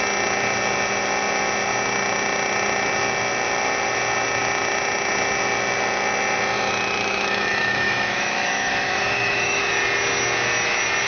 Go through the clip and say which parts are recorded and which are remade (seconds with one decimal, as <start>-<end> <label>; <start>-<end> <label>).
0.0-7.0 recorded; 7.0-9.6 remade; 9.6-11.1 recorded